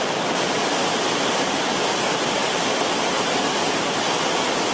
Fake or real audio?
real